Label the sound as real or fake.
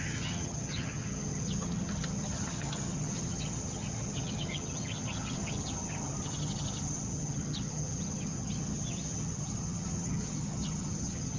fake